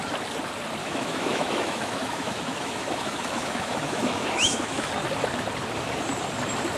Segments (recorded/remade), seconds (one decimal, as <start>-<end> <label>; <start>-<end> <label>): 0.0-0.8 recorded; 0.8-4.9 remade; 4.9-6.8 recorded